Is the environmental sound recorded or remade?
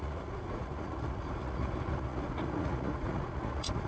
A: remade